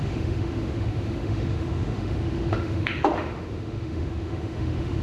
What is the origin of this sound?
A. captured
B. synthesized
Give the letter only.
B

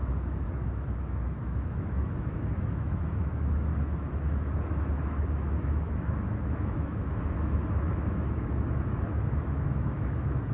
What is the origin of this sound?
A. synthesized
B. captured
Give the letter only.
A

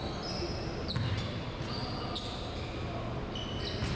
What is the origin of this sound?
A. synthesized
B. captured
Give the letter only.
B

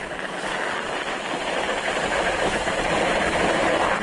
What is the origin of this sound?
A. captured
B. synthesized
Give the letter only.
A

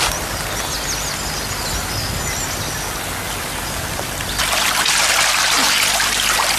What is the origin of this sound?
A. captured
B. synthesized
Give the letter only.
A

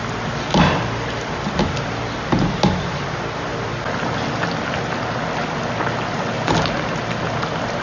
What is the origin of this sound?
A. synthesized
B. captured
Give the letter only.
B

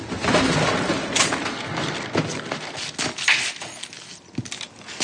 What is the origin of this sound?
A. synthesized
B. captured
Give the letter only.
B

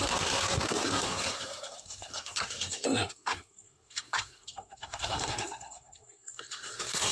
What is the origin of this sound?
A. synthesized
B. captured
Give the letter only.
A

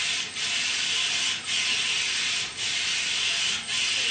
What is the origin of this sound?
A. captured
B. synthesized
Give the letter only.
A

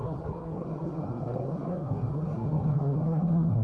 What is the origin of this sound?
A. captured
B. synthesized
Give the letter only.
B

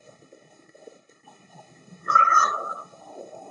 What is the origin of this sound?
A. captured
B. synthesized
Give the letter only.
B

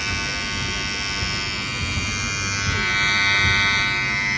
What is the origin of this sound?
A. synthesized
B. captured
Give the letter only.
B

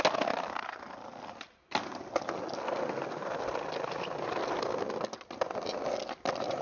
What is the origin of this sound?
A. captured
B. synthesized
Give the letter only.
A